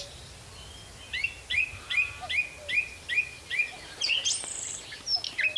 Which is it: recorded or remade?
recorded